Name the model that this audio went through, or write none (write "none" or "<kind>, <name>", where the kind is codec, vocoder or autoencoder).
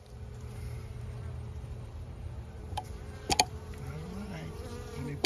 vocoder, BigVGAN v2